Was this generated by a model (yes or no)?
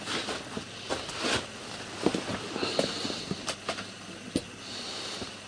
no